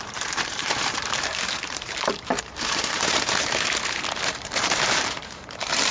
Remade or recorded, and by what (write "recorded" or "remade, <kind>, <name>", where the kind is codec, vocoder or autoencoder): remade, vocoder, BigVGAN v2